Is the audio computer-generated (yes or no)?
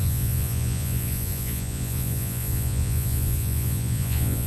yes